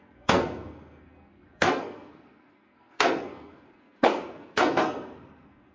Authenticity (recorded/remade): remade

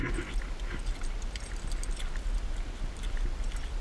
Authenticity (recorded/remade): recorded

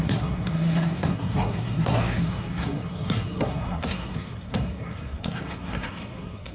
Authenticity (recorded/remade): remade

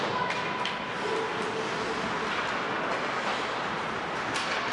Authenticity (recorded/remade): recorded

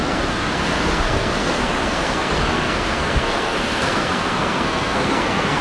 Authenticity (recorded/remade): remade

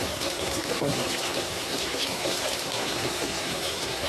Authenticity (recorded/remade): remade